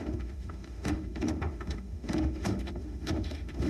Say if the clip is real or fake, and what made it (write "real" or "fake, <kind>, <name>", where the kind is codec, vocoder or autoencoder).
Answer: fake, autoencoder, DAC-VAE